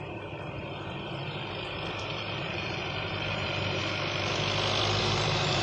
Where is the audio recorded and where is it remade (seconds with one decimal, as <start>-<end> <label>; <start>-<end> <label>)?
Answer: 0.0-0.6 remade; 0.6-2.0 recorded; 2.0-3.8 remade; 3.8-5.0 recorded; 5.0-5.6 remade